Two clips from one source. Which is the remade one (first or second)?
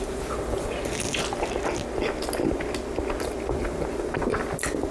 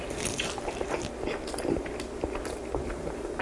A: second